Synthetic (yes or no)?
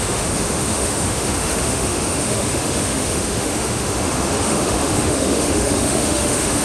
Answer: yes